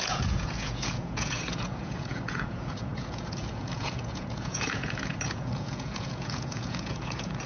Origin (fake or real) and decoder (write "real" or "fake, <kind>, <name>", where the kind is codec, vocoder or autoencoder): fake, vocoder, Vocos